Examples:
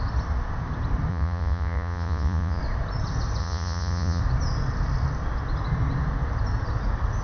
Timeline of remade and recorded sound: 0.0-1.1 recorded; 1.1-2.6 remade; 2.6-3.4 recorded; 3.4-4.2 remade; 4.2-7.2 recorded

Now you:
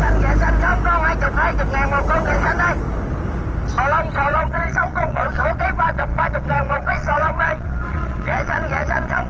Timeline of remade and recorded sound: 0.0-4.3 recorded; 4.3-9.3 remade